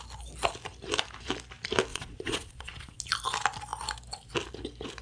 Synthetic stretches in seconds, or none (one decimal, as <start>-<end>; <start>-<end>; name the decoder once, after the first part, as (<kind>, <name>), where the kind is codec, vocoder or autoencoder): 1.9-3.0 (vocoder, Vocos)